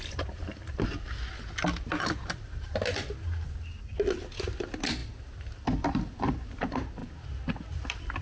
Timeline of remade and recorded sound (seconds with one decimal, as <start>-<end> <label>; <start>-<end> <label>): 0.0-8.2 recorded